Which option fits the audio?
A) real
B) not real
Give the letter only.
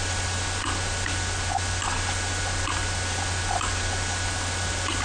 A